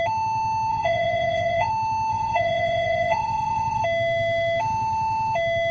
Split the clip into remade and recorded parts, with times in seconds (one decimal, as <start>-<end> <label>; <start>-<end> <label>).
0.0-0.7 recorded; 0.7-1.7 remade; 1.7-2.1 recorded; 2.1-3.8 remade; 3.8-5.7 recorded